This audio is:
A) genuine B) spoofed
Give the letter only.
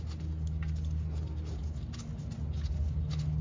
A